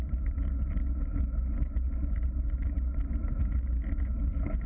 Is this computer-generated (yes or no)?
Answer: no